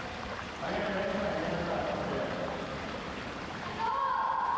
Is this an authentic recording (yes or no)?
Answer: no